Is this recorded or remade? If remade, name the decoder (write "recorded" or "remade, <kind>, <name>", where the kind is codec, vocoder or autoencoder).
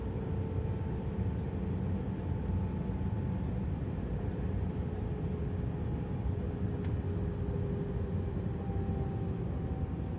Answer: recorded